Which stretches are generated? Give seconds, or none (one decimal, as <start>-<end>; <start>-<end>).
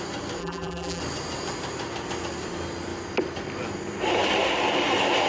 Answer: 0.4-1.0